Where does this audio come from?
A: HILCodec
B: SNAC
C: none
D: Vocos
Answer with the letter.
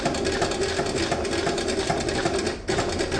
C